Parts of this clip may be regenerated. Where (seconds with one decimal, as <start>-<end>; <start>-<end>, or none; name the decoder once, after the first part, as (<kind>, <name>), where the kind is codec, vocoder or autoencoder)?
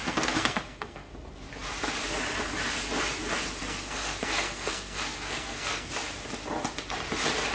0.0-1.1 (codec, SNAC); 3.6-5.9